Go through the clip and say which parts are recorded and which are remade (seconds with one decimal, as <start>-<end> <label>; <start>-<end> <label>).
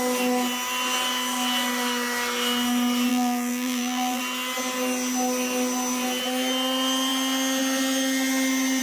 0.0-3.1 recorded; 3.1-4.2 remade; 4.2-8.8 recorded